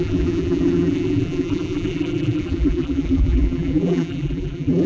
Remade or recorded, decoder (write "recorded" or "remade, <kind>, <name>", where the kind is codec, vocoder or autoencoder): remade, vocoder, BigVGAN v2